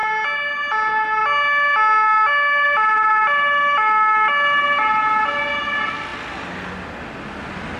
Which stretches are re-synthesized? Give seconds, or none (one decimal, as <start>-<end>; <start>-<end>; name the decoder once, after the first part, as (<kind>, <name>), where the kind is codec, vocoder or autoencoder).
none